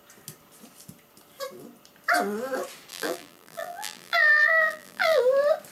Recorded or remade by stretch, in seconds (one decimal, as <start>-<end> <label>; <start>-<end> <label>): 0.0-2.9 recorded; 2.9-5.2 remade; 5.2-5.7 recorded